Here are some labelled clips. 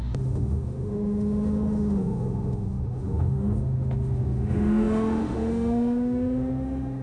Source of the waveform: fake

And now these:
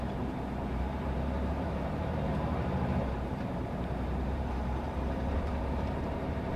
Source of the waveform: fake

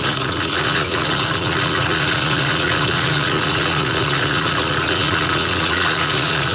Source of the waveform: fake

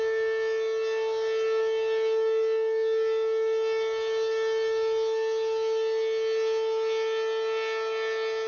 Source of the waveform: real